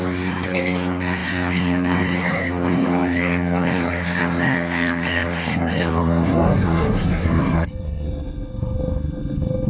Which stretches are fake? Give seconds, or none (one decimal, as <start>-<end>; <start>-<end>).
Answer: 0.0-9.7